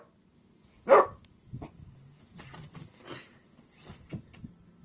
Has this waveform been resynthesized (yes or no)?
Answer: no